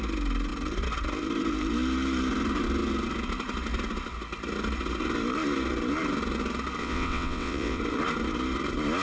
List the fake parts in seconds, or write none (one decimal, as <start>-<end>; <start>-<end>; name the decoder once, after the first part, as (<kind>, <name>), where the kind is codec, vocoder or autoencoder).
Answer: 6.8-7.8 (vocoder, WaveNeXt)